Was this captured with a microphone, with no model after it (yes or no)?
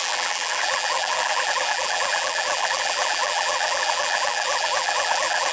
no